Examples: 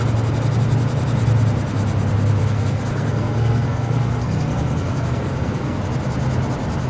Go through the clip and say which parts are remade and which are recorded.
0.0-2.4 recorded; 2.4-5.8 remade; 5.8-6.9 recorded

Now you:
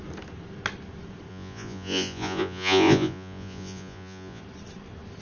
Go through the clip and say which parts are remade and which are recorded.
0.0-1.3 recorded; 1.3-4.4 remade; 4.4-5.2 recorded

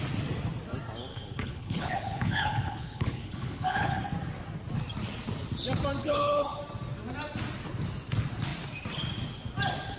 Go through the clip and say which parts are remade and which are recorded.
0.0-1.1 recorded; 1.1-4.0 remade; 4.0-6.0 recorded; 6.0-6.6 remade; 6.6-10.0 recorded